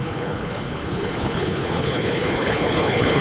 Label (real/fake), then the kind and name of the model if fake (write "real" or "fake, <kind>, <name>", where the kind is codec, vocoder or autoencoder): fake, codec, HILCodec